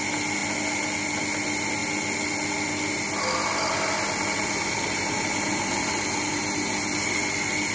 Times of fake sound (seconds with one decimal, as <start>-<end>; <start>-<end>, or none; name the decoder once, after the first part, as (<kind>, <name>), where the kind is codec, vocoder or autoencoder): none